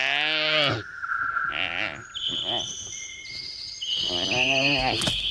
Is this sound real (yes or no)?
yes